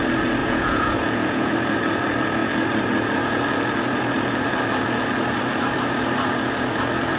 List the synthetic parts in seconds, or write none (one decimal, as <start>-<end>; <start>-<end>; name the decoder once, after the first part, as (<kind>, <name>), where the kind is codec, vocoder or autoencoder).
0.4-1.5 (vocoder, Vocos)